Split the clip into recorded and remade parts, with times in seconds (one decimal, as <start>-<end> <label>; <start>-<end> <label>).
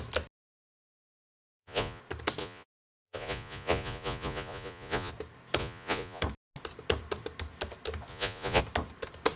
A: 0.0-0.4 recorded; 0.4-2.0 remade; 2.0-2.4 recorded; 2.4-5.1 remade; 5.1-5.6 recorded; 5.6-6.2 remade; 6.2-8.1 recorded; 8.1-8.6 remade; 8.6-9.4 recorded